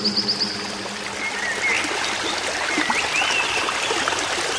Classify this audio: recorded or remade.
recorded